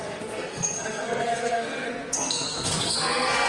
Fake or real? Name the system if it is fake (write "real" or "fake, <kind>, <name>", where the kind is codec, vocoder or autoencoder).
fake, codec, SNAC